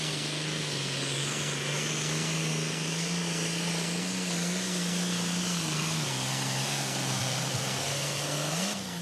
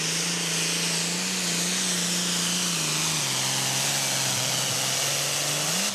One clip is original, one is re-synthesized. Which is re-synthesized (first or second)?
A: first